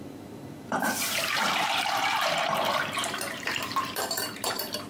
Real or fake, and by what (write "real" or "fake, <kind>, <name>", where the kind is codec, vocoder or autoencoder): fake, vocoder, BigVGAN v2